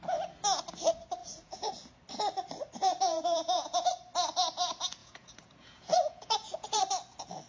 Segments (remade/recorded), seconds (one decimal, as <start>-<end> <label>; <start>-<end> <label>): 0.0-1.2 recorded; 1.2-1.7 remade; 1.7-2.8 recorded; 2.8-3.9 remade; 3.9-5.0 recorded; 5.0-6.8 remade; 6.8-7.5 recorded